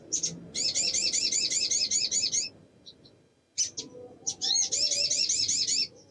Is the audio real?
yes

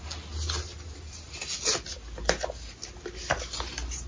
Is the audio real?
yes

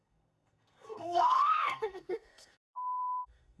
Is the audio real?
no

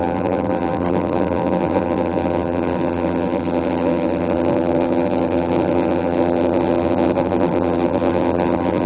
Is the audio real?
no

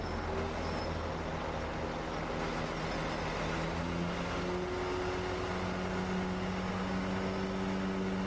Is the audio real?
yes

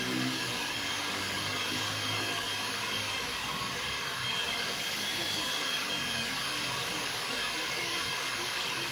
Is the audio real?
no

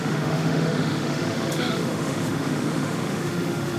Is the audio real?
no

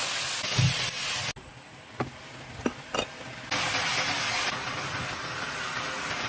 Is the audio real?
yes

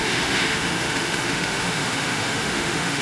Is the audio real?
no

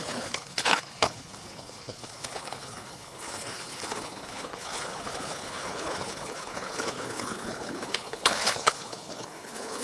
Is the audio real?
no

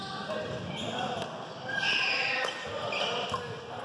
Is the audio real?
yes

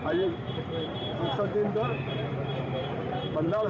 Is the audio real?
no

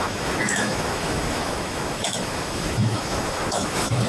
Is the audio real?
no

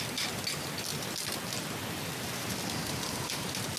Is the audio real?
yes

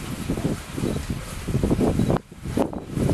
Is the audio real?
yes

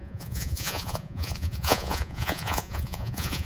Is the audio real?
no